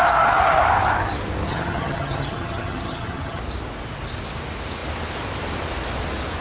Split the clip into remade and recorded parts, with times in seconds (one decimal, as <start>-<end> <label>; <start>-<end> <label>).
0.0-1.5 recorded; 1.5-3.4 remade; 3.4-6.4 recorded